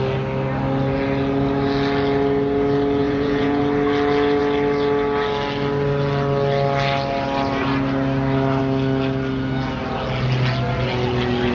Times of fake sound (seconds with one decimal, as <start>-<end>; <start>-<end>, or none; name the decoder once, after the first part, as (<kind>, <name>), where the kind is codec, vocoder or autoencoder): 3.0-3.6 (vocoder, Vocos)